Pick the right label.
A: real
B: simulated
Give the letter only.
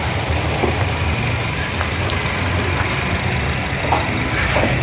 A